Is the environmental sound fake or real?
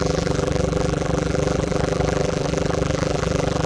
fake